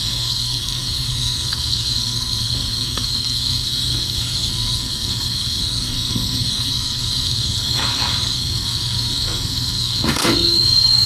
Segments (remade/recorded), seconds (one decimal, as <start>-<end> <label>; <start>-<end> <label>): 0.0-11.1 remade